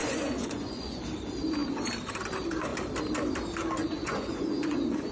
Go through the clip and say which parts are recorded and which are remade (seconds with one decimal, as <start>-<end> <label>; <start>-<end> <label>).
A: 0.0-1.0 remade; 1.0-3.8 recorded; 3.8-5.1 remade